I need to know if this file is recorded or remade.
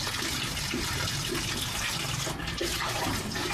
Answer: recorded